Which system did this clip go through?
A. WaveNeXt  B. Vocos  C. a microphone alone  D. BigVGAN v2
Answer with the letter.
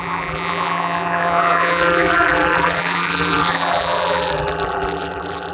D